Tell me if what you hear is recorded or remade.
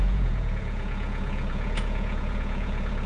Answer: remade